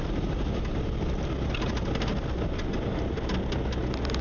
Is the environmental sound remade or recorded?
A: recorded